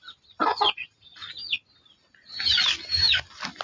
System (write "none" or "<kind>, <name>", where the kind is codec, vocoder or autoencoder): none